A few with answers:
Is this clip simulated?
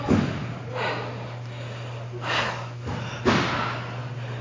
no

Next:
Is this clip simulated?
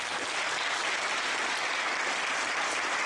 no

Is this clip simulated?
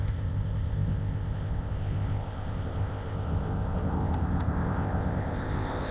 yes